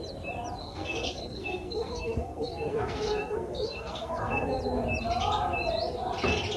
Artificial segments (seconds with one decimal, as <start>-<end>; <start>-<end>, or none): 0.6-4.6